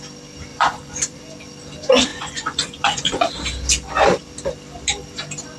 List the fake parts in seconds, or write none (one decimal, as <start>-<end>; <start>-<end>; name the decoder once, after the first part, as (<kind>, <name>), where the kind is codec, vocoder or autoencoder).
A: 0.5-1.2 (vocoder, Vocos); 2.1-3.3